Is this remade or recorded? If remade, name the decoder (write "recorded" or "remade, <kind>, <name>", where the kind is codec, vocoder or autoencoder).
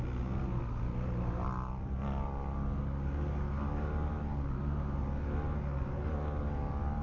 recorded